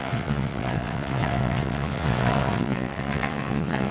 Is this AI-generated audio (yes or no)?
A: yes